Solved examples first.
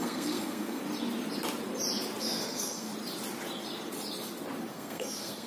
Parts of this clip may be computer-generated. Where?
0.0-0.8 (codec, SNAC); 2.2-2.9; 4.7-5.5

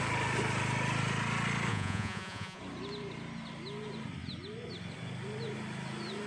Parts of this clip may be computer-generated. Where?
1.7-2.6 (vocoder, Vocos)